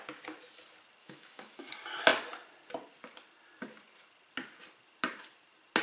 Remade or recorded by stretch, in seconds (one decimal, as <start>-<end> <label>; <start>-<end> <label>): 0.0-1.0 recorded; 1.0-1.7 remade; 1.7-5.8 recorded